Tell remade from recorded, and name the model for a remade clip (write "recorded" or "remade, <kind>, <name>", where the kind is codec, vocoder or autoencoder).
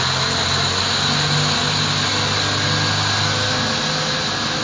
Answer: recorded